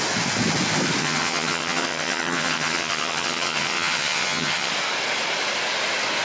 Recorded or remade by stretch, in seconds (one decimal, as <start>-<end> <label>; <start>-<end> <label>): 0.0-1.0 recorded; 1.0-4.7 remade; 4.7-6.2 recorded